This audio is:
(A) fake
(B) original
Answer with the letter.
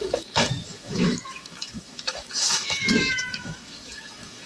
A